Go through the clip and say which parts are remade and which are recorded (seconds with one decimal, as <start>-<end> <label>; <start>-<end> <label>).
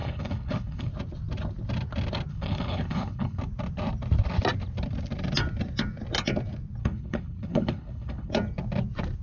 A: 0.0-0.9 remade; 0.9-2.3 recorded; 2.3-3.4 remade; 3.4-6.8 recorded; 6.8-8.3 remade; 8.3-9.2 recorded